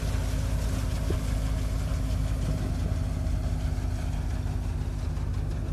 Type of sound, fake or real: real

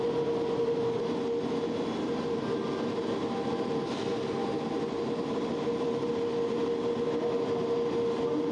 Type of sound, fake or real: real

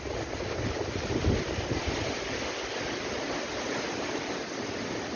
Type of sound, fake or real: real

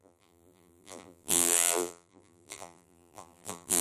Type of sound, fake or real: fake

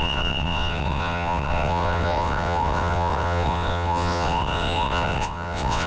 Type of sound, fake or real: fake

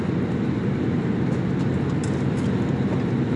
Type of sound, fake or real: real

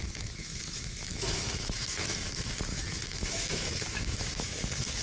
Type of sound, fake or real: fake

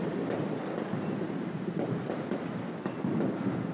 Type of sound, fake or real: real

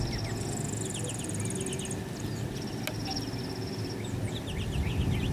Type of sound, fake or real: real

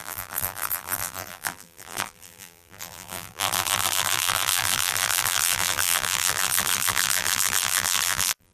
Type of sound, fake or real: fake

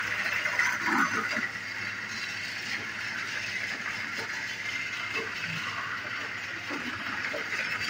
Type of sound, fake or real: fake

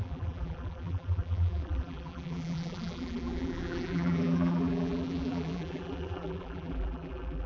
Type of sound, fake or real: fake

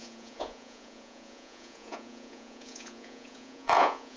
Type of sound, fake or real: fake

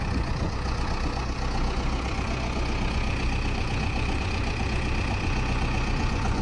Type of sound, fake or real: fake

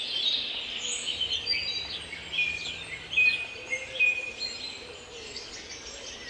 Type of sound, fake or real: real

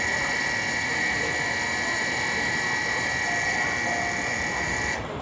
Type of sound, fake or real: real